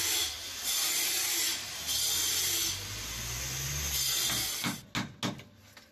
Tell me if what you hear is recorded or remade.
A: recorded